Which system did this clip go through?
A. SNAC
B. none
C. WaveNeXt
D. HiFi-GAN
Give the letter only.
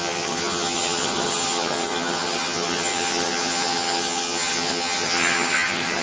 D